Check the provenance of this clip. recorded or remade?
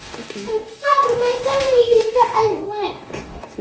remade